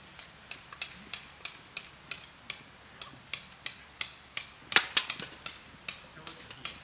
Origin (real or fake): real